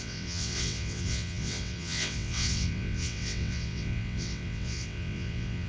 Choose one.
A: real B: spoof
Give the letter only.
B